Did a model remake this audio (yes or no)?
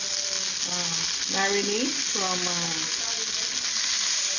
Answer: no